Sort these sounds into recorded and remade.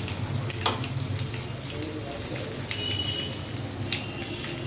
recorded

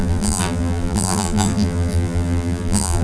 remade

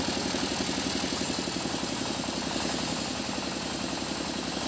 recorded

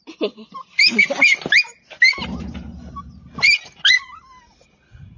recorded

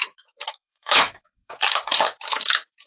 remade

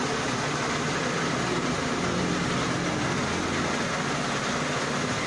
recorded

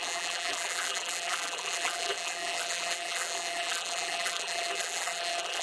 remade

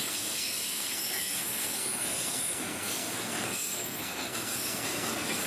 remade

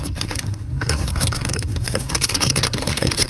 remade